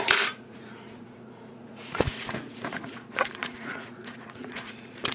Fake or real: fake